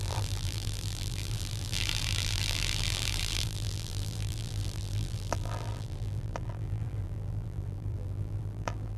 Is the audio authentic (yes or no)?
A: no